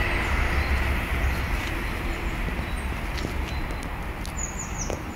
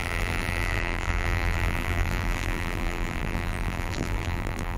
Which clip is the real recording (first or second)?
first